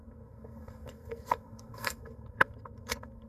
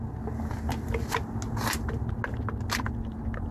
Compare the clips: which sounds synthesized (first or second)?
first